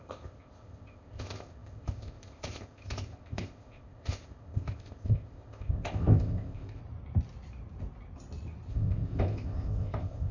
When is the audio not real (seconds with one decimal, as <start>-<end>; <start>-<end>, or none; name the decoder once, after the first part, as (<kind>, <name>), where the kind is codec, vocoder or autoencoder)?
0.0-6.8 (codec, ZipCodec); 8.7-10.3